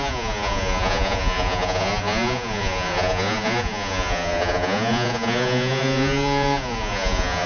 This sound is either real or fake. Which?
fake